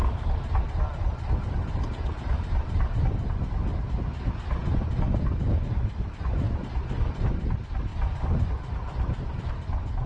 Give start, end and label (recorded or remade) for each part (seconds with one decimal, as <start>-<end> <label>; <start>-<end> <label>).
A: 0.0-7.9 recorded; 7.9-9.5 remade; 9.5-10.1 recorded